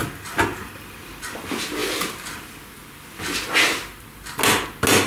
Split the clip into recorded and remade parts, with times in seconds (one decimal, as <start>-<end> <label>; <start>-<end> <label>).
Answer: 0.0-5.1 recorded